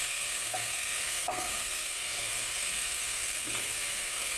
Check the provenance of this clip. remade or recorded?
remade